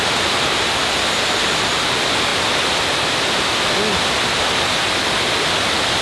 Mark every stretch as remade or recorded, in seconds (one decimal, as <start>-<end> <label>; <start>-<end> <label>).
0.0-6.0 recorded